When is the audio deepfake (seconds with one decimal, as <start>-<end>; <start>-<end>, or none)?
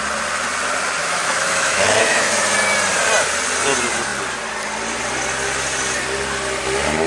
1.0-2.3